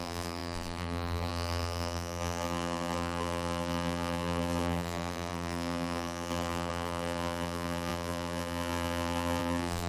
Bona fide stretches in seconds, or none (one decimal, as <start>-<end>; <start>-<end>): none